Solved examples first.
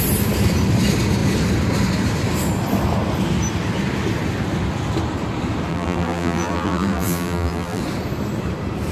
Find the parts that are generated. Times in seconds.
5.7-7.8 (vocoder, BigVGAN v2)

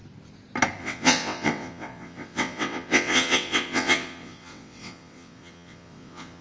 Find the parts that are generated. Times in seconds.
0.8-6.4 (vocoder, WaveNeXt)